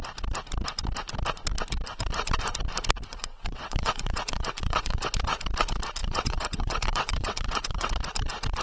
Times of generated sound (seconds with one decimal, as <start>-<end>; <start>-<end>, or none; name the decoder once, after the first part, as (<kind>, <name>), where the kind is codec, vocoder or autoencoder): 3.1-5.1 (vocoder, WaveNeXt); 6.0-7.9